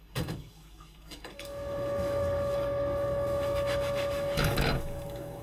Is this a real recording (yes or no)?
no